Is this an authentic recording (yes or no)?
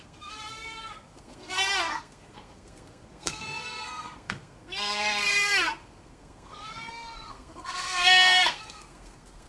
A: no